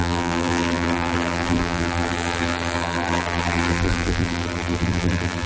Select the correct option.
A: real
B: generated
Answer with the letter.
B